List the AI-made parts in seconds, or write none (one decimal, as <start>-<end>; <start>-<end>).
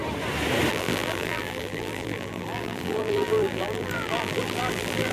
0.7-5.1